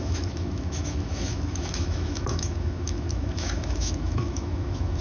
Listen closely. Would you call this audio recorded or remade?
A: remade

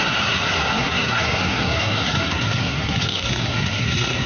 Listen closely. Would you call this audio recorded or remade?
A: remade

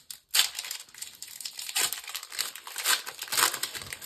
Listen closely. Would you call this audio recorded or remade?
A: remade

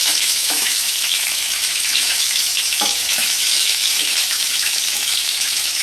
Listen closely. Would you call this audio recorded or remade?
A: remade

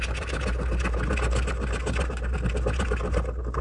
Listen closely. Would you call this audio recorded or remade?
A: recorded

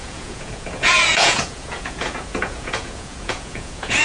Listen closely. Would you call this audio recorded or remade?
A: remade